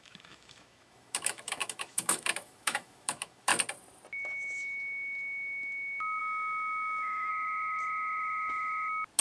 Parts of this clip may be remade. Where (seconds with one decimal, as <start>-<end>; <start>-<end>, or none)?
0.0-3.5; 6.2-7.3

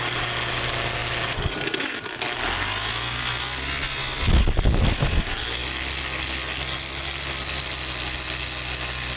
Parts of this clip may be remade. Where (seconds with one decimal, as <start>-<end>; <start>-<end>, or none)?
none

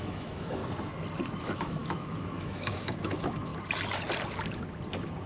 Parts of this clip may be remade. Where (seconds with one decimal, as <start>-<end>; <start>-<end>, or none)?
0.0-0.6; 1.4-3.5

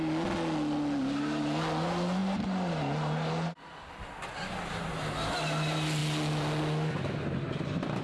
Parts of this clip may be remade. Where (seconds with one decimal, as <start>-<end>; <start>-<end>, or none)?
none

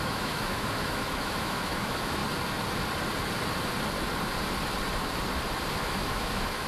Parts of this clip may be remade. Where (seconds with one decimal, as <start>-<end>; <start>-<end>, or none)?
0.0-2.2; 5.8-6.7

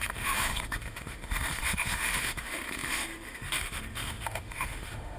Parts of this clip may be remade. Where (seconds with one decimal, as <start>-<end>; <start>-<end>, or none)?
0.0-5.2